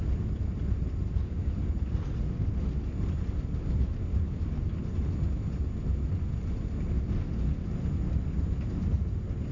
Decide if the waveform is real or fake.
real